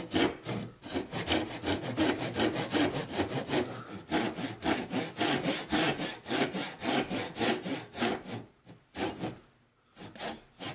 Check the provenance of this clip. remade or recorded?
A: recorded